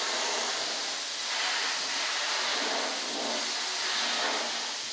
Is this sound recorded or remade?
recorded